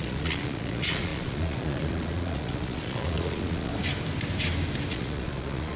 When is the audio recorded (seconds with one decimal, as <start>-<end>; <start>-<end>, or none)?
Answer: 3.7-4.9